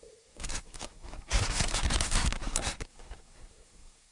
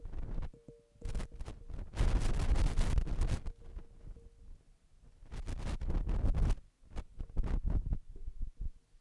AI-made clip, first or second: first